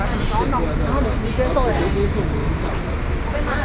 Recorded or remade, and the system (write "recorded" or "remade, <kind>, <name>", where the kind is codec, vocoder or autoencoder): recorded